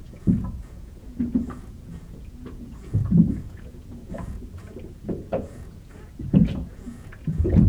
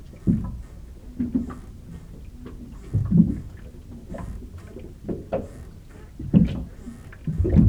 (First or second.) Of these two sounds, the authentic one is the second